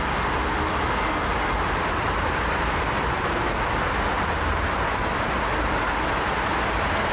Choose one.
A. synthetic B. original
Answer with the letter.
B